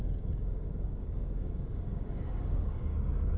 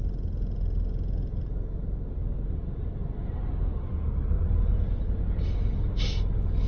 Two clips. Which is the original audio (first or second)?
second